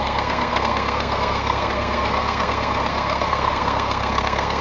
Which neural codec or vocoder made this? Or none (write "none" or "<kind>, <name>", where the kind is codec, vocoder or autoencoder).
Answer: codec, SNAC